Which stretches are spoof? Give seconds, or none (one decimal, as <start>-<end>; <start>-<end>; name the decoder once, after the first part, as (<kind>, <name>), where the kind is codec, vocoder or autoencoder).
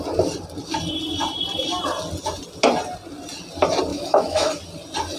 3.9-4.5 (autoencoder, DAC-VAE)